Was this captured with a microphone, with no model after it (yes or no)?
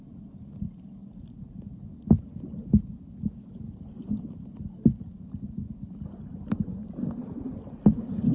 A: yes